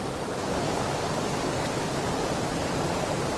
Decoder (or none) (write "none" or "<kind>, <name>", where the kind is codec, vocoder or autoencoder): none